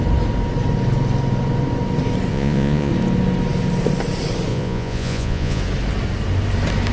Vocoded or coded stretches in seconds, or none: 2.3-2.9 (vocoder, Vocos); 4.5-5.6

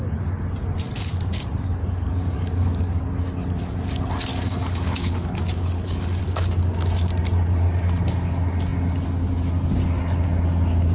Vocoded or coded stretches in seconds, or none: 1.8-3.0 (codec, DAC); 4.3-6.2

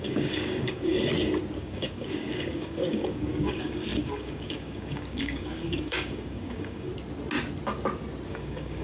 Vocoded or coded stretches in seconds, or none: 0.0-1.1 (codec, DAC); 1.6-6.9; 8.3-8.8

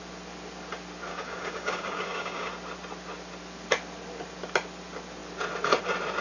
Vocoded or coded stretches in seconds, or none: 1.1-2.5 (codec, DAC)

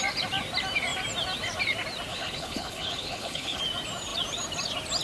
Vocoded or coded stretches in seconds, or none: 2.1-3.6 (codec, HILCodec)